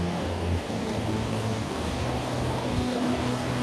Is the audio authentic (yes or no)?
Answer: no